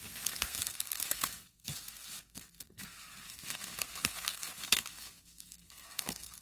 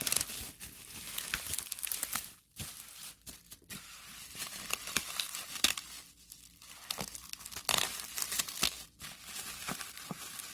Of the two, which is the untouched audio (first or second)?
second